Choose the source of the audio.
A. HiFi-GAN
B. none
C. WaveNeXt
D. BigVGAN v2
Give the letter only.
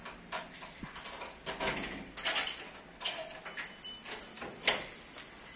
B